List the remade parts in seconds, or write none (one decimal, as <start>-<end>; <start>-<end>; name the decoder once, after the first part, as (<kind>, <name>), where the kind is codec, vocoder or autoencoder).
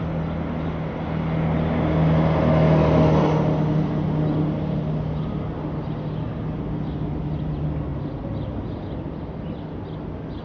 none